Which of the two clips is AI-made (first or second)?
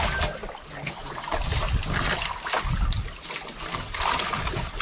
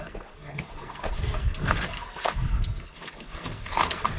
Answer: second